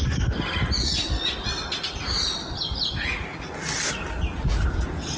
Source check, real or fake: real